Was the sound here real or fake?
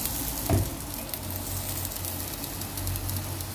real